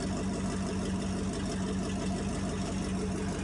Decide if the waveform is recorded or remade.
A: recorded